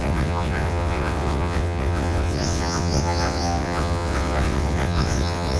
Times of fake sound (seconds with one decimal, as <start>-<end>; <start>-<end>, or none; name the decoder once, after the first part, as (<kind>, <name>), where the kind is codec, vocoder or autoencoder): 0.0-5.6 (vocoder, WaveNeXt)